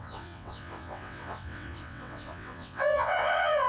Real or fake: fake